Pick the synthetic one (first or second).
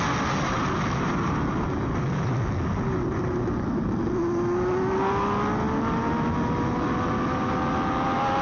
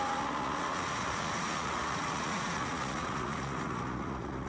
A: second